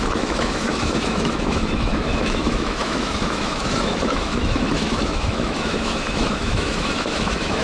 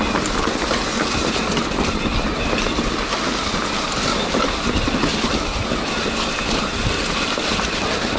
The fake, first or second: first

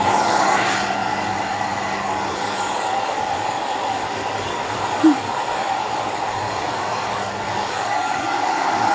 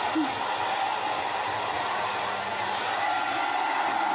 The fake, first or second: first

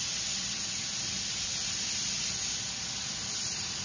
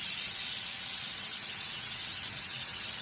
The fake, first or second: second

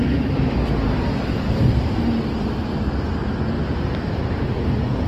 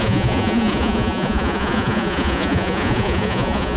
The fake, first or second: second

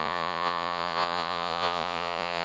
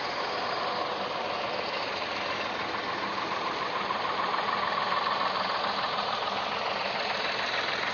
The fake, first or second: first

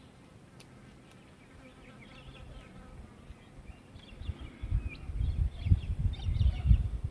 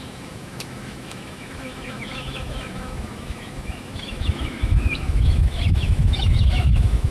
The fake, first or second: second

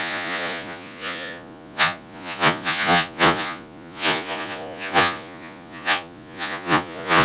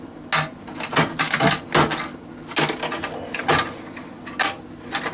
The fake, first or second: first